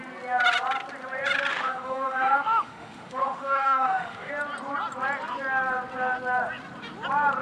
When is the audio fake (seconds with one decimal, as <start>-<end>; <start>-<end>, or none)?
1.5-4.3